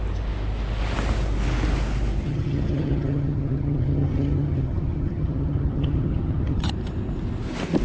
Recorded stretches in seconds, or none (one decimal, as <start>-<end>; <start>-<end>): 0.0-2.2; 6.7-7.8